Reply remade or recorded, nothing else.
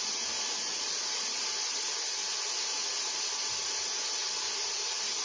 recorded